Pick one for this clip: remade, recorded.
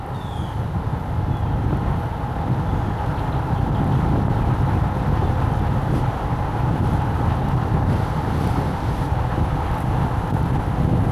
recorded